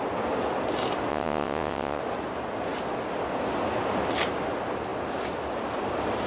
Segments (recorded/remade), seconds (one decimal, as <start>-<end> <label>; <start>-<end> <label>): 0.0-1.1 recorded; 1.1-2.0 remade; 2.0-6.3 recorded